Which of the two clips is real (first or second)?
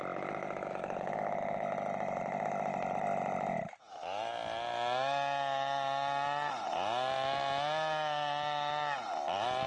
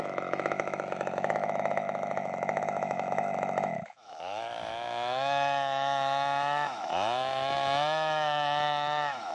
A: first